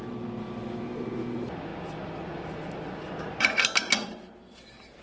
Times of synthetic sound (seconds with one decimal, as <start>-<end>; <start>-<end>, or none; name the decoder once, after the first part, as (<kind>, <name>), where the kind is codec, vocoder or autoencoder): none